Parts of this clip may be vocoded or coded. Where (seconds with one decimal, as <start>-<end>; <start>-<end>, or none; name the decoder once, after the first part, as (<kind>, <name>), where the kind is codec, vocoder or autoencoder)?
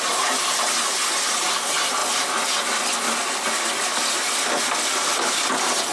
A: 0.0-2.0 (vocoder, BigVGAN v2); 5.5-5.9